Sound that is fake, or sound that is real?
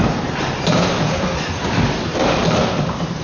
fake